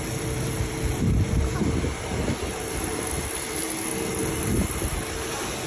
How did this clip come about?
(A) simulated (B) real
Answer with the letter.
A